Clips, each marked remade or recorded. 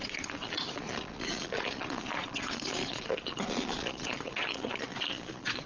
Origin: remade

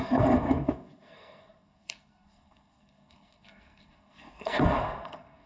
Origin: remade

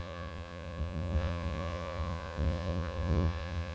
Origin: remade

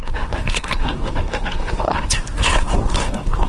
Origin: remade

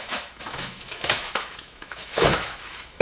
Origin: remade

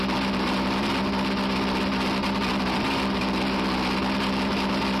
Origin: recorded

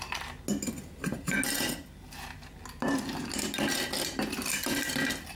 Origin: recorded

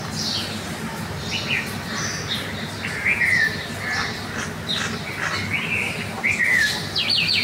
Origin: recorded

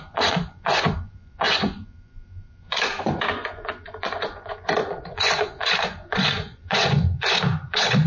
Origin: remade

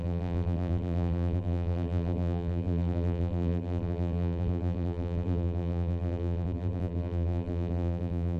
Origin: remade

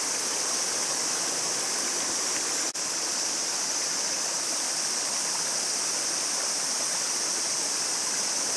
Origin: recorded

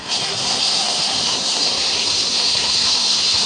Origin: remade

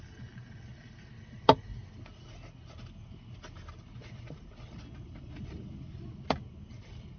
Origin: recorded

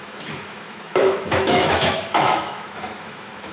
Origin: remade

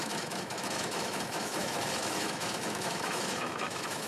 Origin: remade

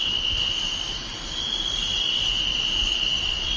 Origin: recorded